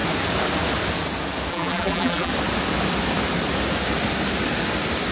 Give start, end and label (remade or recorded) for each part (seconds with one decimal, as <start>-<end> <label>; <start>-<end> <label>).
0.0-1.5 recorded; 1.5-2.3 remade; 2.3-5.1 recorded